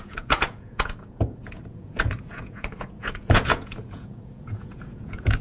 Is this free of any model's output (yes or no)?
no